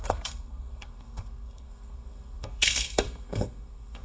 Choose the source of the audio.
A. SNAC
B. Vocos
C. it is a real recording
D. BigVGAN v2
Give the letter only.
A